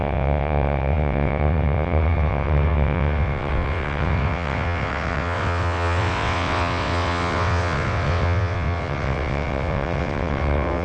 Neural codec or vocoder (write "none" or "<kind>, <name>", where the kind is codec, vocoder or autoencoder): vocoder, WaveNeXt